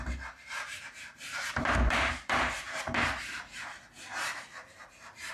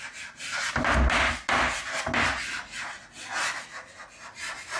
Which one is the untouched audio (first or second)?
second